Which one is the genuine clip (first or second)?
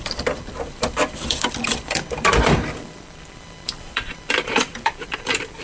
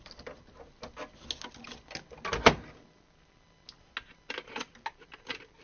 second